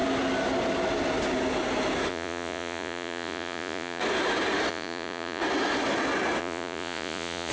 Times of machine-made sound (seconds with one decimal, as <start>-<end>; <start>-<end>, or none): 2.1-4.0; 4.7-5.4; 6.4-7.5